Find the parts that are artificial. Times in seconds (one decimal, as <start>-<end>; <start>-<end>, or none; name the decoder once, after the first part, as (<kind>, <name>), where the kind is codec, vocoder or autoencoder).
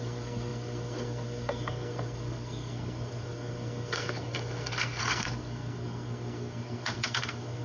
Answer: 0.0-7.6 (codec, SNAC)